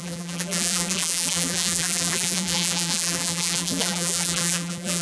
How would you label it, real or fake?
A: fake